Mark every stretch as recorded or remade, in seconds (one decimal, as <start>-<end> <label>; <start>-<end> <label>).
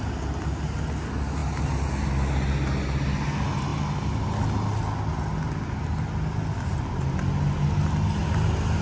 0.0-8.2 recorded; 8.2-8.8 remade